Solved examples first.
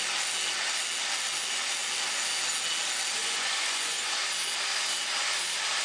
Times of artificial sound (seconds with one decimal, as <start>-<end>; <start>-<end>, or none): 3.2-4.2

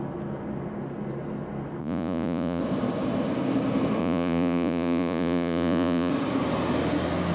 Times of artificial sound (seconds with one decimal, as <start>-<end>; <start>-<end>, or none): 1.8-2.6; 4.0-6.1

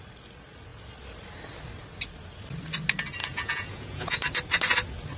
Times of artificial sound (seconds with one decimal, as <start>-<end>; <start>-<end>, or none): 3.2-4.2

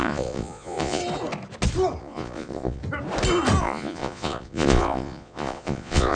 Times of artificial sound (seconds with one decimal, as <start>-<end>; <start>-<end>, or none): 0.0-1.0; 2.0-2.8; 3.6-6.2

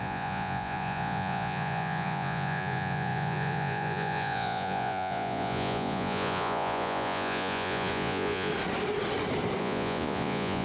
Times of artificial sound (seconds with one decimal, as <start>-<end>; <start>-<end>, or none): 0.0-8.5; 9.6-10.6

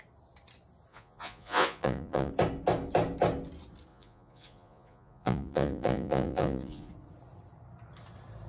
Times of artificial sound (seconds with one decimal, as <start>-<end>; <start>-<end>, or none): 0.9-2.3; 3.9-6.9

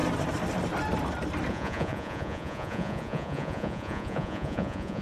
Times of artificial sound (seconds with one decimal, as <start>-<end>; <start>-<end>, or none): 1.5-5.0